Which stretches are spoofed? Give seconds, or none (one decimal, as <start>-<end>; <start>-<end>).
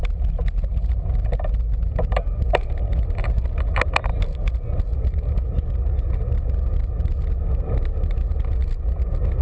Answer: none